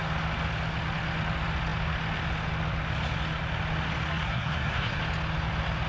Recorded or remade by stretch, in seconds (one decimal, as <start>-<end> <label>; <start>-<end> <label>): 0.0-4.1 recorded; 4.1-5.0 remade; 5.0-5.9 recorded